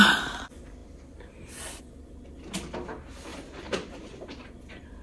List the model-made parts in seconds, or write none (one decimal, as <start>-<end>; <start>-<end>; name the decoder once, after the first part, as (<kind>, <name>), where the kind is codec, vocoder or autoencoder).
none